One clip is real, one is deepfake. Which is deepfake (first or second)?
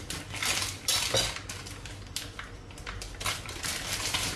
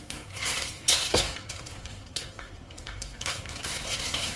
second